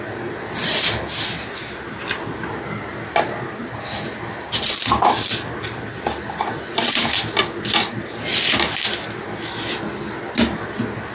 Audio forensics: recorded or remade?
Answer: recorded